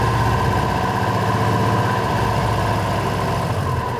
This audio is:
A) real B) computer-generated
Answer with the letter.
A